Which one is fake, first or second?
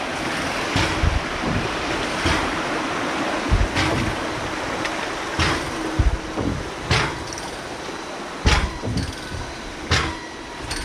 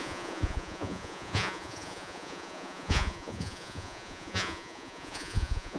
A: second